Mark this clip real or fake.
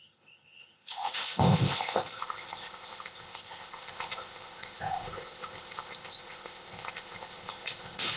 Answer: fake